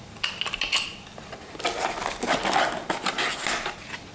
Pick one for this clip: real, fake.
real